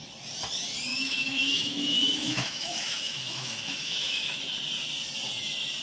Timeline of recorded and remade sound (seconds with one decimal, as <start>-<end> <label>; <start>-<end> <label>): 0.0-0.9 recorded; 0.9-4.4 remade; 4.4-5.8 recorded